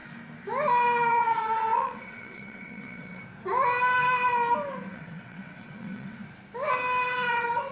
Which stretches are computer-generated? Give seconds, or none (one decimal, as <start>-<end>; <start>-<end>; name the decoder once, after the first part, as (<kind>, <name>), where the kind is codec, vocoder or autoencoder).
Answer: 1.1-3.2 (vocoder, WaveNeXt); 4.9-6.2; 7.3-7.7